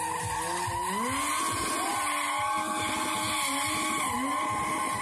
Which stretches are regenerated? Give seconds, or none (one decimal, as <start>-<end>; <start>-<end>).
none